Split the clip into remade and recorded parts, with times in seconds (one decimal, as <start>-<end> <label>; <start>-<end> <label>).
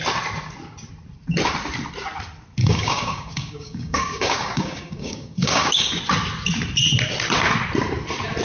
0.0-2.6 recorded; 2.6-6.0 remade; 6.0-8.4 recorded